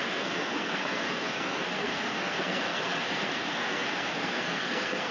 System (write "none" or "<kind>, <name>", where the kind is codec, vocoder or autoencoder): codec, SNAC